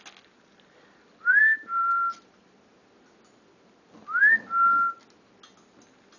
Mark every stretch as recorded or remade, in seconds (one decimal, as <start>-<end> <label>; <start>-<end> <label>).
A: 0.0-6.2 recorded